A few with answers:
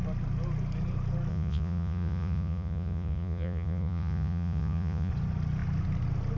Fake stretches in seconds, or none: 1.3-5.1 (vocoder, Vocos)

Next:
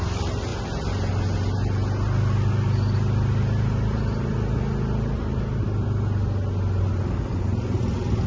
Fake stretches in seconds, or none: none